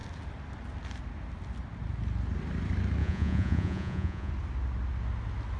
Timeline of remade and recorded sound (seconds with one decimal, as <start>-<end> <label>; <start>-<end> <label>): 0.0-3.0 recorded; 3.0-4.3 remade; 4.3-5.6 recorded